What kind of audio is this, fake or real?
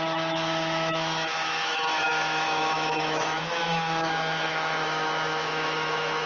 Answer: fake